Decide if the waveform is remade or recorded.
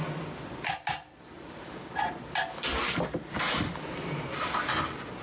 recorded